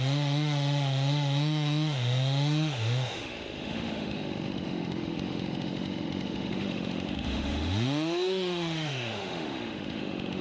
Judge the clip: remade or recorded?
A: remade